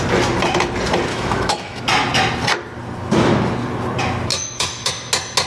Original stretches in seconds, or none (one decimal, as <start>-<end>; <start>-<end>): 0.0-1.1; 1.8-4.3; 4.9-5.5